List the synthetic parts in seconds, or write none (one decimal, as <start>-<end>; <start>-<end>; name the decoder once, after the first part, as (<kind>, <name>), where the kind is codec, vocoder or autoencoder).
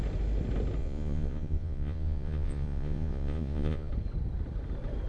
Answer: 0.8-3.9 (vocoder, Vocos)